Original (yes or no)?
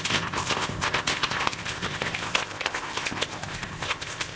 no